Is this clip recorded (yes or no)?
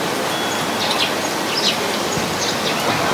yes